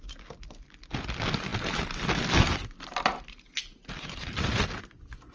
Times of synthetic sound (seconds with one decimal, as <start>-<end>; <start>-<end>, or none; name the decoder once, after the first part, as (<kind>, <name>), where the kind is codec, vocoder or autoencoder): none